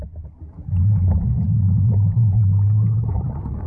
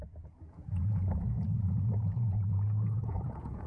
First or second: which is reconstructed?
second